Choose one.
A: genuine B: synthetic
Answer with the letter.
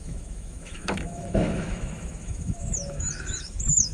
B